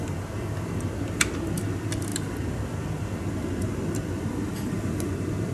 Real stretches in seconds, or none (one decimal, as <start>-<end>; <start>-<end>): 0.0-5.5